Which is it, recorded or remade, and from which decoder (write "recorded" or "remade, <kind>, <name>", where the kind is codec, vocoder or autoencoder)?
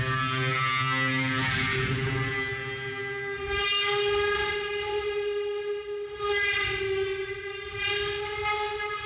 recorded